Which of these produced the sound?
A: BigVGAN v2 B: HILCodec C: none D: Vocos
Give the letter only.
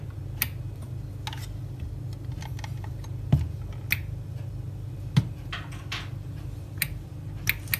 C